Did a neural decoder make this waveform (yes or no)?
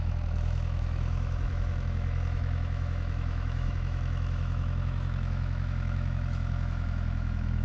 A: yes